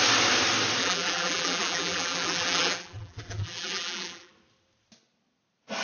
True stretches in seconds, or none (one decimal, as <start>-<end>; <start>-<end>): 0.0-0.8; 4.3-5.8